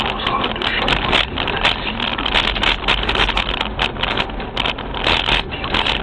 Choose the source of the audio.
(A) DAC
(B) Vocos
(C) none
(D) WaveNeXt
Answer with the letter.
C